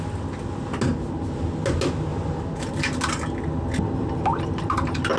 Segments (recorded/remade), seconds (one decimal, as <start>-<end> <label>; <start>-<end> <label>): 0.0-5.2 recorded